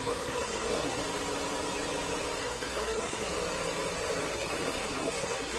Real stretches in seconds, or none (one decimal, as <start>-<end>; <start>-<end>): 1.0-2.4; 3.3-4.3